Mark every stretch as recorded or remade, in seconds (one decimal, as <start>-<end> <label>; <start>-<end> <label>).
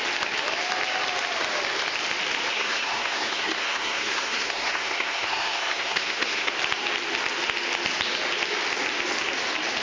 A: 0.0-2.5 recorded; 2.5-6.5 remade; 6.5-9.8 recorded